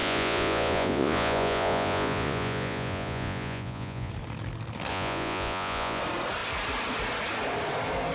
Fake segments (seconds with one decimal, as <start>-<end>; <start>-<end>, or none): 0.0-4.1; 4.9-6.0